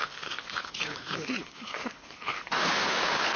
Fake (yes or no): yes